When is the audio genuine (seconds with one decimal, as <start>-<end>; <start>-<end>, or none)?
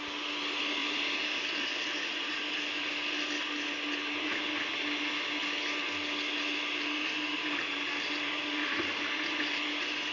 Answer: 0.0-0.8; 1.7-10.1